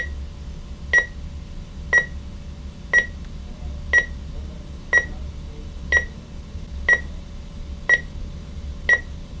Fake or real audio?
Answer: real